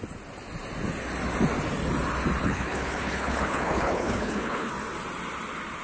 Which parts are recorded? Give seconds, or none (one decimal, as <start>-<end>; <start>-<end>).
0.0-2.4; 4.7-5.8